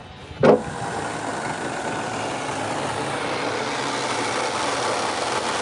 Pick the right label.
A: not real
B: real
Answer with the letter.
B